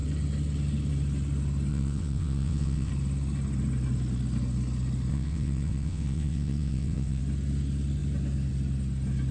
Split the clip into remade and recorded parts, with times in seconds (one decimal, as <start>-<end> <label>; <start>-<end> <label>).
0.0-1.7 recorded; 1.7-2.9 remade; 2.9-5.1 recorded; 5.1-7.2 remade; 7.2-9.3 recorded